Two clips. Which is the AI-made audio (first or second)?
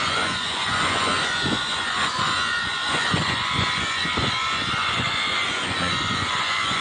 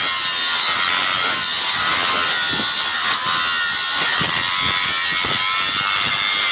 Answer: first